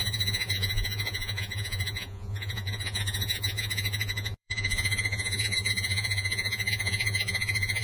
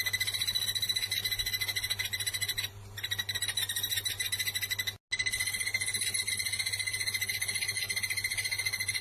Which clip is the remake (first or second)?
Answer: first